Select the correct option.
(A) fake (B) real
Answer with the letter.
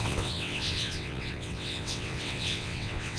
A